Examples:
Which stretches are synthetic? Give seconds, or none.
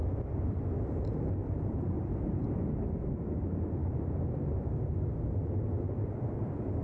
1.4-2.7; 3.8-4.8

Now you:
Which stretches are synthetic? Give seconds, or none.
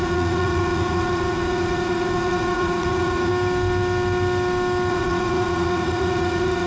0.0-3.3; 4.9-6.7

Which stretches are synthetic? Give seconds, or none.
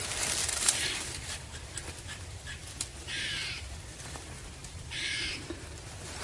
0.4-1.7; 4.6-5.3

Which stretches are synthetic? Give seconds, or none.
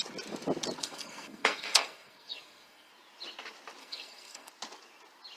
0.8-2.9; 3.8-4.5